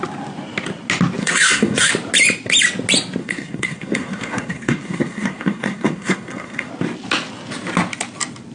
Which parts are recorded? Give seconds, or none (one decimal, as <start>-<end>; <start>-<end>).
0.0-1.2; 1.9-3.2; 6.7-8.5